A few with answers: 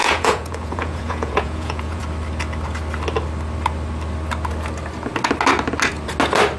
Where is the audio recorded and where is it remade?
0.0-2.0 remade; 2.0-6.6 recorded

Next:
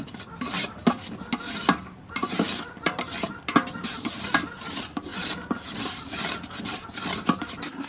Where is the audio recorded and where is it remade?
0.0-0.8 remade; 0.8-1.5 recorded; 1.5-7.9 remade

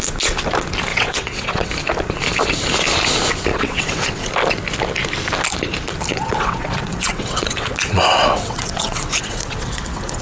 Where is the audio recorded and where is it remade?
0.0-0.9 recorded; 0.9-1.7 remade; 1.7-3.5 recorded; 3.5-4.3 remade; 4.3-6.1 recorded; 6.1-10.2 remade

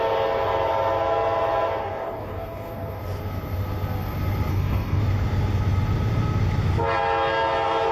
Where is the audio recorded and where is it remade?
0.0-1.8 recorded; 1.8-3.0 remade; 3.0-4.5 recorded; 4.5-5.0 remade; 5.0-7.9 recorded